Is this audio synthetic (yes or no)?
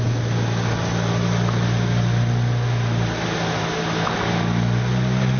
no